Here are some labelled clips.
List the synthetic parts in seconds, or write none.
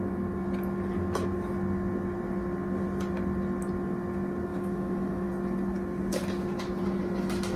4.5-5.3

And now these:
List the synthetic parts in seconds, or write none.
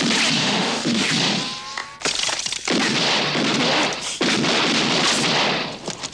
0.4-1.1